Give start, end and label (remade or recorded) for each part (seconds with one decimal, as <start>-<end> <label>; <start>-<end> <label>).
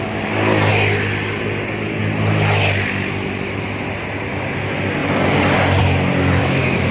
0.0-6.4 recorded; 6.4-6.9 remade